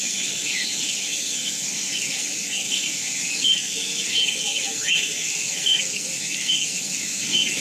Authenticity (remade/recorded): remade